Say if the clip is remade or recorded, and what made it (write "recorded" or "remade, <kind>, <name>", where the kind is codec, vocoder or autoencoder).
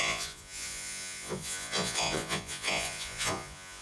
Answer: remade, vocoder, Vocos